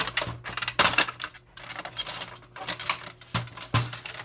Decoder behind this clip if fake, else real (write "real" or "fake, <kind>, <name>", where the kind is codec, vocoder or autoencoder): real